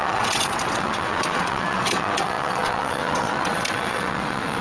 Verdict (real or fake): fake